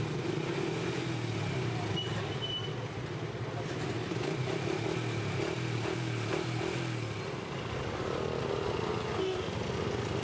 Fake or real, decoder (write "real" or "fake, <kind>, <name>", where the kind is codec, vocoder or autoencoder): real